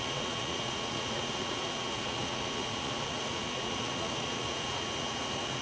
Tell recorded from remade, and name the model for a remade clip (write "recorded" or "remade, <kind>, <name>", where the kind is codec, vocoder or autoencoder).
remade, vocoder, Vocos